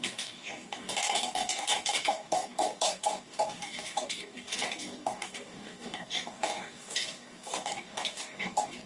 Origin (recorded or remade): remade